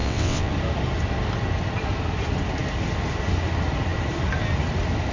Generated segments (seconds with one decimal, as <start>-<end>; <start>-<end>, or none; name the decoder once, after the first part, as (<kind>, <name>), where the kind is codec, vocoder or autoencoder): 0.0-0.5 (vocoder, WaveNeXt)